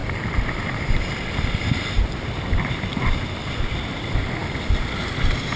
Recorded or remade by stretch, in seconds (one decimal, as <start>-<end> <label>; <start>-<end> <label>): 0.0-3.4 remade; 3.4-5.6 recorded